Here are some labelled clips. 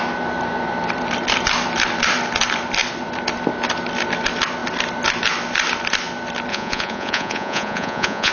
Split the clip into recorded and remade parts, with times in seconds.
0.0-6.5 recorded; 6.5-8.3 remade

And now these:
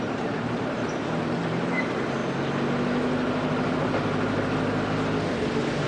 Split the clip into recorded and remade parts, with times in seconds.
0.0-2.2 remade; 2.2-5.9 recorded

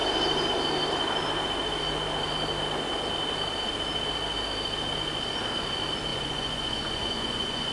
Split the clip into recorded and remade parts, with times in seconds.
0.0-6.1 recorded; 6.1-7.7 remade

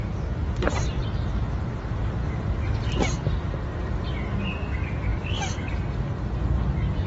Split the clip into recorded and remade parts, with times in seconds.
0.0-7.1 recorded

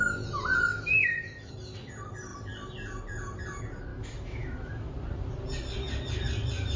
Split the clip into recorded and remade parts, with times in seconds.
0.0-0.7 recorded; 0.7-1.5 remade; 1.5-3.9 recorded; 3.9-4.9 remade; 4.9-6.8 recorded

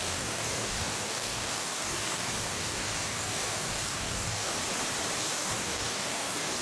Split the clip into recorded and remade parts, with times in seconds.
0.0-4.5 remade; 4.5-5.2 recorded; 5.2-6.6 remade

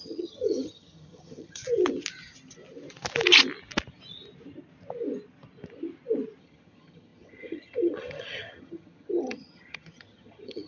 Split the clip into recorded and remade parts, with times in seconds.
0.0-1.6 remade; 1.6-6.4 recorded; 6.4-10.7 remade

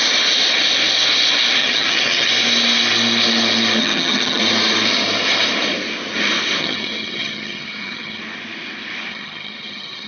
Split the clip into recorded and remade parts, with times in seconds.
0.0-1.6 recorded; 1.6-2.3 remade; 2.3-3.8 recorded; 3.8-4.4 remade; 4.4-6.6 recorded; 6.6-8.2 remade; 8.2-9.1 recorded; 9.1-10.1 remade